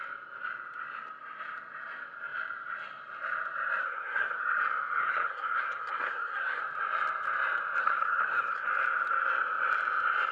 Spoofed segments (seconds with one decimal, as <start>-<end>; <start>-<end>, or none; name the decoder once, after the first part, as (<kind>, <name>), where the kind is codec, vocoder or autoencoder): 3.8-4.4 (codec, SNAC); 5.0-6.6; 7.8-8.7